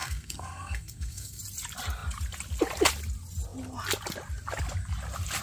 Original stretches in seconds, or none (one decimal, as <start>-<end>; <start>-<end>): 1.4-5.4